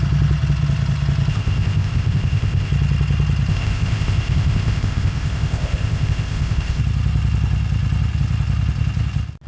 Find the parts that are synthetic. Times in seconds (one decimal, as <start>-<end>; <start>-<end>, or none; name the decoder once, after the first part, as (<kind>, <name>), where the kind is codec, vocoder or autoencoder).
1.3-2.7 (codec, ZipCodec); 3.5-6.8